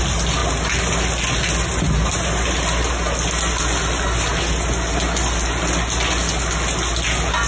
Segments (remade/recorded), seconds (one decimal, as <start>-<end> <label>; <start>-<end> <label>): 0.0-7.5 recorded